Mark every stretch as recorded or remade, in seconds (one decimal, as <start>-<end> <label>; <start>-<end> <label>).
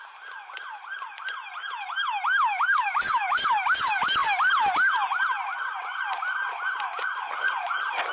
0.0-8.1 recorded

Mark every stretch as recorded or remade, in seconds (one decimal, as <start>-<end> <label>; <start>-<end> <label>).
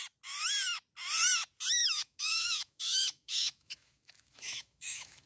0.0-1.8 recorded; 1.8-5.3 remade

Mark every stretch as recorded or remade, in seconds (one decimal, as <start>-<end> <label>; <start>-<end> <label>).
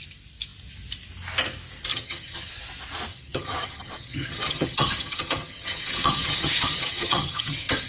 0.0-1.9 recorded; 1.9-2.5 remade; 2.5-3.1 recorded; 3.1-7.9 remade